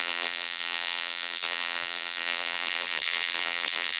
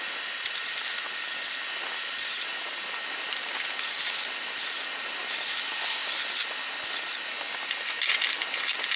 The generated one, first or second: first